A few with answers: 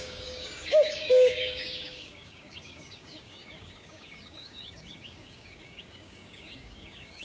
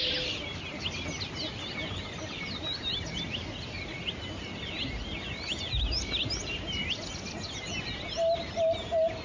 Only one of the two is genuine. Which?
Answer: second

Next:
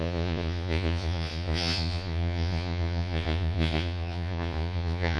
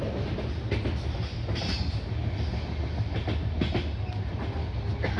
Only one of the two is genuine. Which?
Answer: second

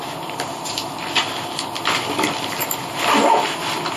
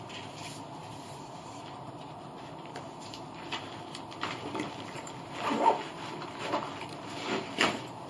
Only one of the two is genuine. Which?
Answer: first